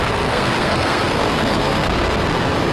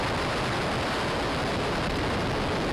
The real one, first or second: second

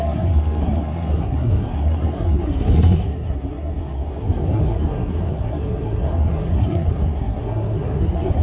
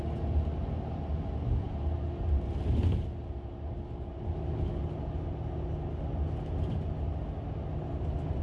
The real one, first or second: second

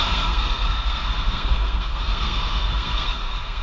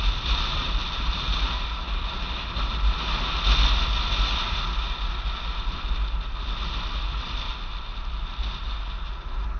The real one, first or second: second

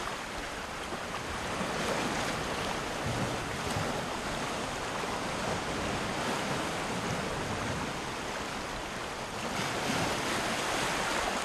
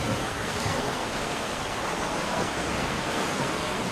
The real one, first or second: first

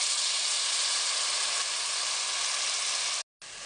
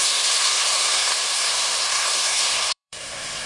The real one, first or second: first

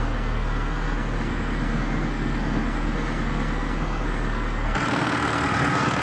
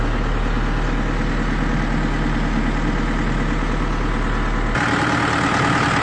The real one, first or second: second